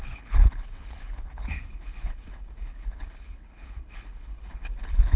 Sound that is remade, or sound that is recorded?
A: remade